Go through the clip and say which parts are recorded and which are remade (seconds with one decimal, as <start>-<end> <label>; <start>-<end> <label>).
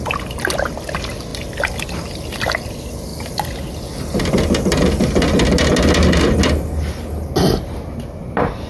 0.0-8.7 recorded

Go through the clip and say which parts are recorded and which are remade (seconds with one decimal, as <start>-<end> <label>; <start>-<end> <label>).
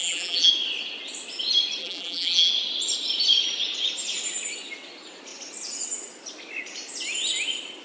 0.0-0.5 remade; 0.5-1.8 recorded; 1.8-2.5 remade; 2.5-7.8 recorded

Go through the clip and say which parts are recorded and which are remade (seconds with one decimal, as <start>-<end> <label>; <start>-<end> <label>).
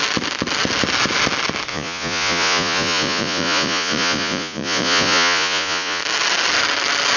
0.0-1.7 recorded; 1.7-6.0 remade; 6.0-7.2 recorded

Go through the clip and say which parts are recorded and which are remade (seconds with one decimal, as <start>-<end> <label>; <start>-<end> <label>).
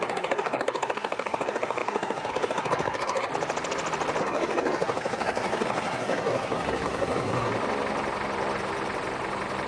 0.0-3.3 remade; 3.3-4.2 recorded; 4.2-7.5 remade; 7.5-9.7 recorded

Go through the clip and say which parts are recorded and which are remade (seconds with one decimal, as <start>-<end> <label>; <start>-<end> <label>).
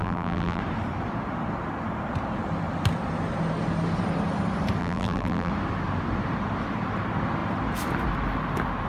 0.0-0.6 remade; 0.6-4.8 recorded; 4.8-5.5 remade; 5.5-8.9 recorded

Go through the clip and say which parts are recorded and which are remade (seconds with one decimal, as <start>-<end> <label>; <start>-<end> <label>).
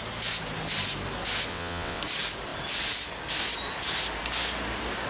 0.0-1.5 recorded; 1.5-2.0 remade; 2.0-5.1 recorded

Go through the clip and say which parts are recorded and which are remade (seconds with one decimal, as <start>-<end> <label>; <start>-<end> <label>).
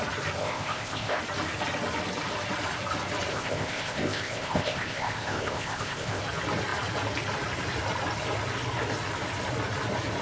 0.0-0.4 recorded; 0.4-1.2 remade; 1.2-3.3 recorded; 3.3-6.2 remade; 6.2-10.2 recorded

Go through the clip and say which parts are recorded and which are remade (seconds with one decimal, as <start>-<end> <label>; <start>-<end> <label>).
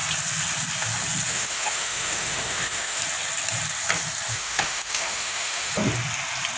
0.0-1.3 recorded; 1.3-3.0 remade; 3.0-4.3 recorded; 4.3-5.7 remade; 5.7-6.6 recorded